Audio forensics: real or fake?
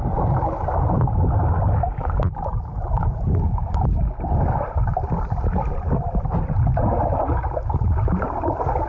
real